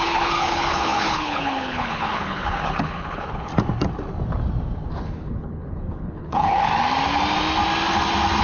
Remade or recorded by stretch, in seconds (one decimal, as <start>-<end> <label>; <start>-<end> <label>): 0.0-3.5 remade; 3.5-5.0 recorded; 5.0-6.7 remade; 6.7-8.4 recorded